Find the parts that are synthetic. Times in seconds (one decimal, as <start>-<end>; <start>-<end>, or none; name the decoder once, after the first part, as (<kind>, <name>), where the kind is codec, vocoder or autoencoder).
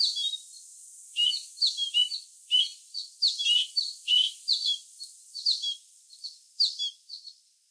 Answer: 2.7-4.7 (vocoder, BigVGAN v2)